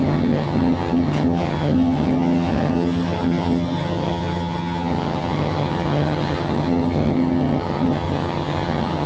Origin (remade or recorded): remade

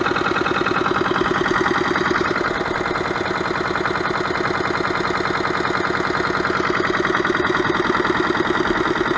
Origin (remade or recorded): recorded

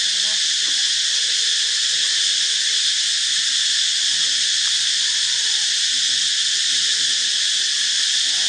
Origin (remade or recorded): recorded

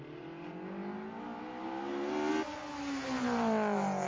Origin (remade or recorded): recorded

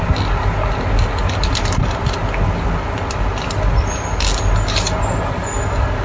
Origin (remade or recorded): recorded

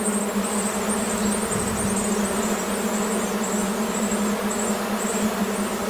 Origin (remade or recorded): recorded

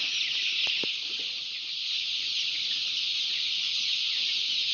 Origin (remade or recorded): recorded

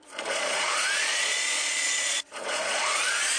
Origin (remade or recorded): remade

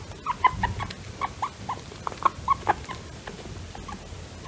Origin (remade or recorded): recorded